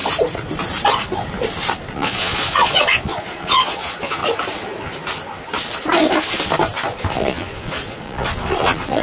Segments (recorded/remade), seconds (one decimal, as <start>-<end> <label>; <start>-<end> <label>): 0.0-1.9 recorded; 1.9-4.2 remade; 4.2-7.1 recorded; 7.1-9.0 remade